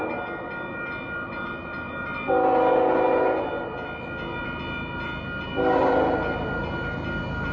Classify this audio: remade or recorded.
recorded